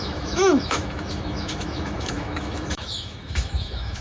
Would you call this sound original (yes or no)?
no